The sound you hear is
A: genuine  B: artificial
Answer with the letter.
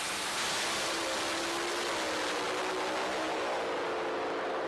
A